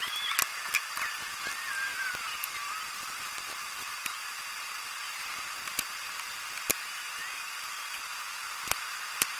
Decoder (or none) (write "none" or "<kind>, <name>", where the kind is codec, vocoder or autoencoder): none